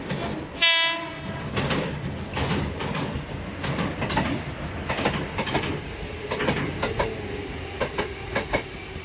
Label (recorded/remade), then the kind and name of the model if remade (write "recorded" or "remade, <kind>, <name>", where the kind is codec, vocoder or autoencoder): recorded